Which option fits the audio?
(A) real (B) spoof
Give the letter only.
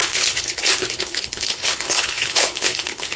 B